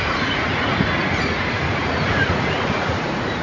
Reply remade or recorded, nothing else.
remade